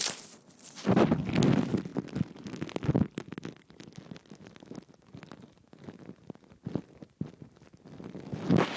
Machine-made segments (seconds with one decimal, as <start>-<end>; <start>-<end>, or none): none